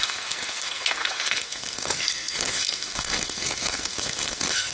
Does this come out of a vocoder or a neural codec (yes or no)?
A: yes